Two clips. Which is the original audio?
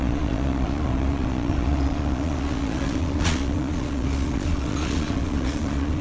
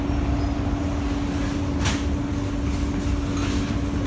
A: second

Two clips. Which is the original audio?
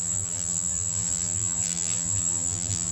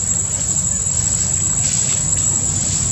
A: second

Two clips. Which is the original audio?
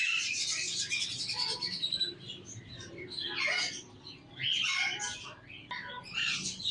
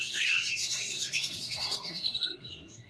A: first